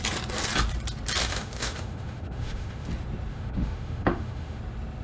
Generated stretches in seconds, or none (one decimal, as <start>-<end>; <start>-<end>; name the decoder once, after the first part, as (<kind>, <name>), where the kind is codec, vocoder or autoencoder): 1.2-2.9 (autoencoder, DAC-VAE); 3.3-4.6